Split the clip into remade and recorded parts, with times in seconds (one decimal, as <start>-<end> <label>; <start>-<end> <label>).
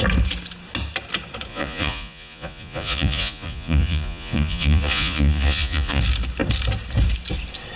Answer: 0.0-1.5 recorded; 1.5-6.0 remade; 6.0-7.8 recorded